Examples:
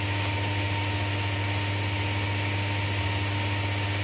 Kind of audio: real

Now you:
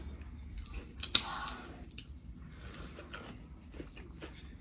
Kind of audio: real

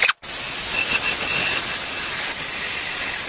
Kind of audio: real